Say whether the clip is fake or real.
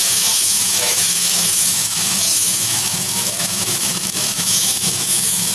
fake